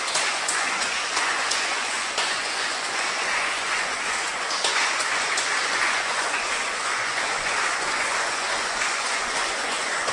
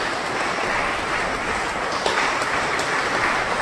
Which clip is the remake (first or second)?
first